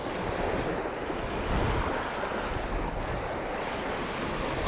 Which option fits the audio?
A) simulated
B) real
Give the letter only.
B